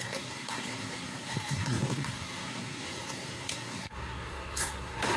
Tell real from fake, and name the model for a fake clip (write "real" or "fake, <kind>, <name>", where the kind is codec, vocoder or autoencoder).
fake, codec, SNAC